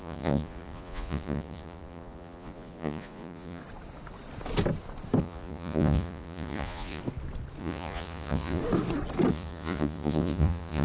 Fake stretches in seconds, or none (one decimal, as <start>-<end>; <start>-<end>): 0.0-3.6; 5.2-7.0; 7.6-8.6; 9.3-10.8